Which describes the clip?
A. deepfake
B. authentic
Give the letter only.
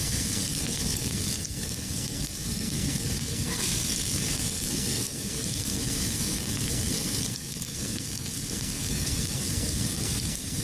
A